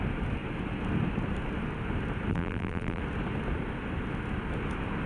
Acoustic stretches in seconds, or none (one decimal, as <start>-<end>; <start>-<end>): 0.0-2.3; 3.0-5.1

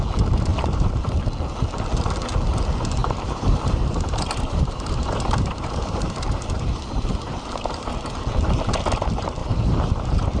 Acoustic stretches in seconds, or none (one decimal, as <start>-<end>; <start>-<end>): 0.0-0.5; 1.2-3.0; 7.9-9.4; 10.0-10.4